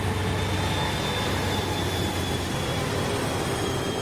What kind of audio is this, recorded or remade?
recorded